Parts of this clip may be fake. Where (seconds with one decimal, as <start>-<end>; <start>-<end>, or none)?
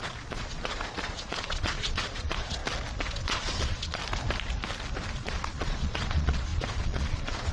0.0-2.6; 3.1-4.0; 5.1-7.5